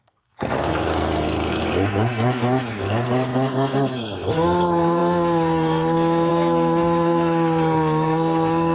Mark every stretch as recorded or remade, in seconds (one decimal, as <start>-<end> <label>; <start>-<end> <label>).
0.0-8.7 remade